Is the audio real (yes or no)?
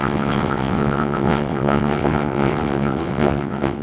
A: no